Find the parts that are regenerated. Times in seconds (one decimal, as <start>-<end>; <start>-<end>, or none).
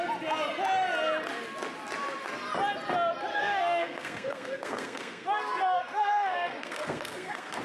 3.3-7.6